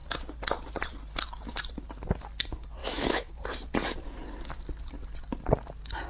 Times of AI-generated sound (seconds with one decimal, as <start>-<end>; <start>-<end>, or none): 2.8-3.3